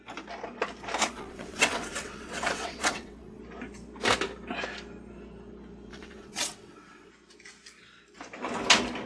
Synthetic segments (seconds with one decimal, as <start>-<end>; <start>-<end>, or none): 1.0-3.4; 5.9-7.1